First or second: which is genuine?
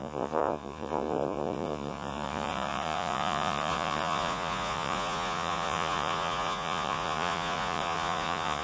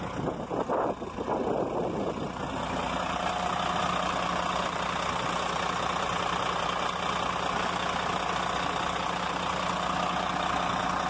second